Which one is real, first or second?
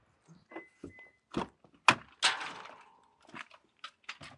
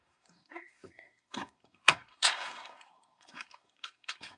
first